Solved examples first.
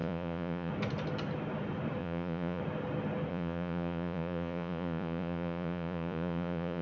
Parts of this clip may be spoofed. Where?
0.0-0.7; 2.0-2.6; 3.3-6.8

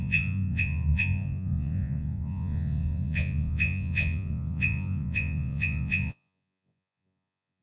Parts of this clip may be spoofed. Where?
0.0-7.6

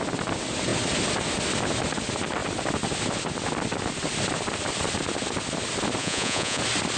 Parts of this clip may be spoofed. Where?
6.0-6.6

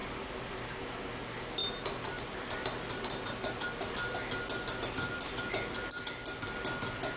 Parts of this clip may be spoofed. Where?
none

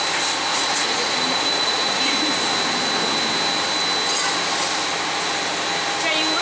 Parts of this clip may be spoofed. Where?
0.5-2.0

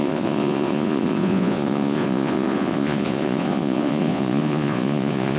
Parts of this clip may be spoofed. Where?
0.0-5.4

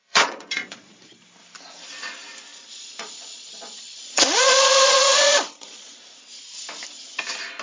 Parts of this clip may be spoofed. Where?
0.0-1.2; 2.5-6.0

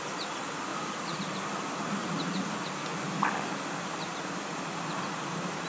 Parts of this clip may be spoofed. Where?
0.7-1.2; 2.0-2.5